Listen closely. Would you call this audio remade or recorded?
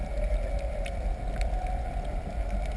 recorded